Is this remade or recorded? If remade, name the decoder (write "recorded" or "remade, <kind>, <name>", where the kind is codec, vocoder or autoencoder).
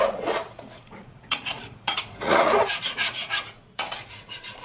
remade, vocoder, Vocos